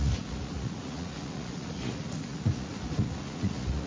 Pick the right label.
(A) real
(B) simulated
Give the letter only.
B